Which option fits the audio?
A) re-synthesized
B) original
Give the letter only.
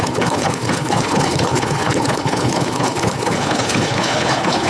A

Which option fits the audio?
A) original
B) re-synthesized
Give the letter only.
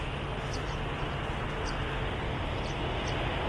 A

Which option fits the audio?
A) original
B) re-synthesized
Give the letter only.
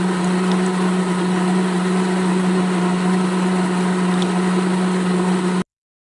A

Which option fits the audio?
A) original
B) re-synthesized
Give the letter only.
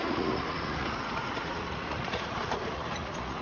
B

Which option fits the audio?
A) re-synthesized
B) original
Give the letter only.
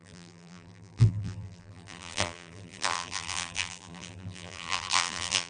A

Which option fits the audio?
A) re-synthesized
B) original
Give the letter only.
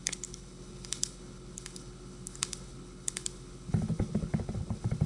A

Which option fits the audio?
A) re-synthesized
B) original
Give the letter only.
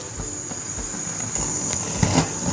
B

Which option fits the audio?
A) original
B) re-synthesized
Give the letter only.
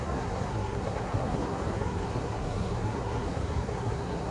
B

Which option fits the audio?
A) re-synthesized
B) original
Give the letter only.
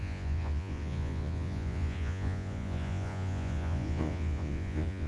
A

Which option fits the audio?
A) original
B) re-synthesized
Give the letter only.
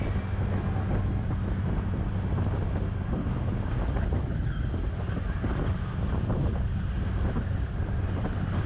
A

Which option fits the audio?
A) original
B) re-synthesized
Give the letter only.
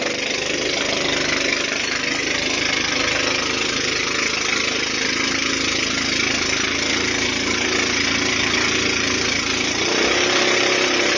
A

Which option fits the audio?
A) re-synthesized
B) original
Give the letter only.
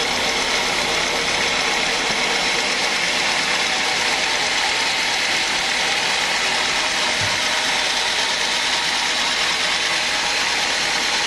A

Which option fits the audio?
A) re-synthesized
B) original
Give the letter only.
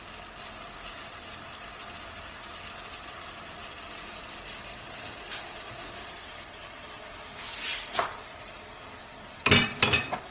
B